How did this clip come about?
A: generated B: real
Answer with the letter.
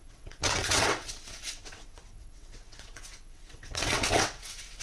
A